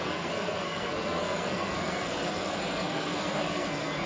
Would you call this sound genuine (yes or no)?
no